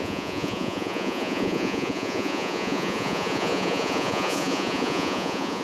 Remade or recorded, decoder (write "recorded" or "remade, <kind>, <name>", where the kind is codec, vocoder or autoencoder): remade, vocoder, Vocos